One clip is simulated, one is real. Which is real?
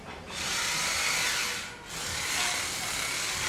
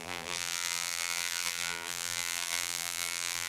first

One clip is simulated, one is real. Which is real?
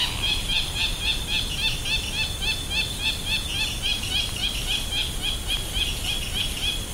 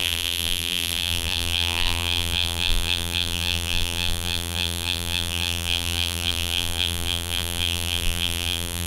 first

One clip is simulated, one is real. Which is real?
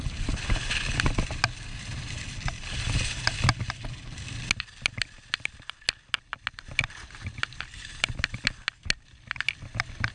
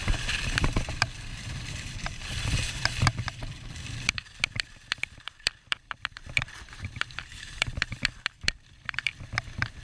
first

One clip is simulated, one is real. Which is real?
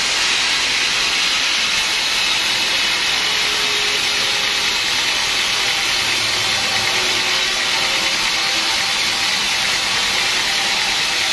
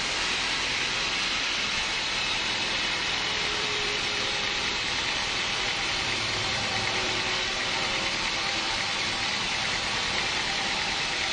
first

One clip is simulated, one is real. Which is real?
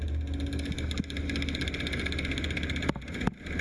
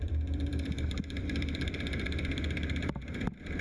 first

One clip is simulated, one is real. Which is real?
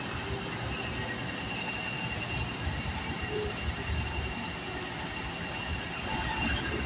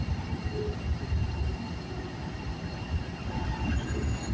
first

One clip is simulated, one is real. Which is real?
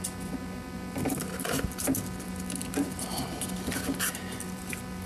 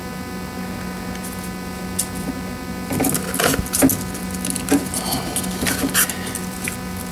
second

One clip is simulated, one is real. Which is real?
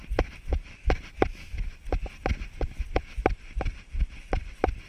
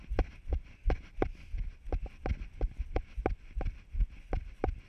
second